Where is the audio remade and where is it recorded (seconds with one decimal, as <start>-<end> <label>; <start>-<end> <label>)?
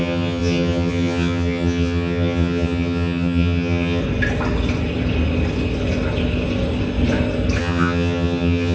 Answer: 0.0-4.0 remade; 4.0-7.6 recorded; 7.6-8.7 remade